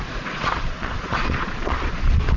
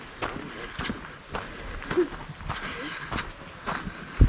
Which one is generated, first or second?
first